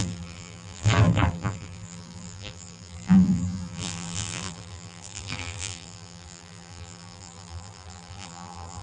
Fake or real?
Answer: fake